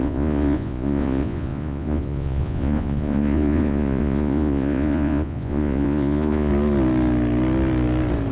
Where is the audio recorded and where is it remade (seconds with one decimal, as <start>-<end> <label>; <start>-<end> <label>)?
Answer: 0.0-6.5 remade; 6.5-8.3 recorded